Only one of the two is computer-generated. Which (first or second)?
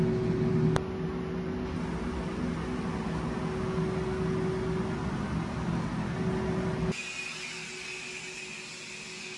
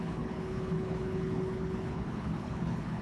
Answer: second